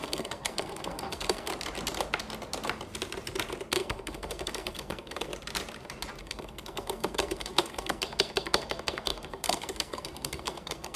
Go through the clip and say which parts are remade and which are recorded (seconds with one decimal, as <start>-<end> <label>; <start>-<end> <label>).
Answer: 0.0-1.5 remade; 1.5-3.7 recorded; 3.7-5.3 remade; 5.3-6.2 recorded; 6.2-11.0 remade